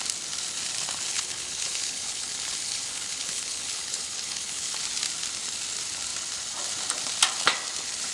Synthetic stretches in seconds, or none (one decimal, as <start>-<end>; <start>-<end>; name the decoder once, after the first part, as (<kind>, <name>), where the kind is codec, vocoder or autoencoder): 1.1-4.8 (codec, HILCodec)